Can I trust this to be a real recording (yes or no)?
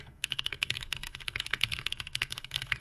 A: no